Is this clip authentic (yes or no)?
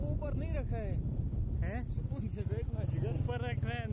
yes